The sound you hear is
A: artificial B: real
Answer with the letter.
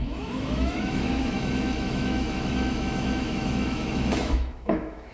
A